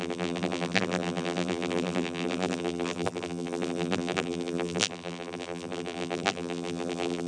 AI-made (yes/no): yes